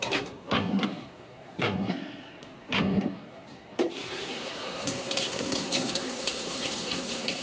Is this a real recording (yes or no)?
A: no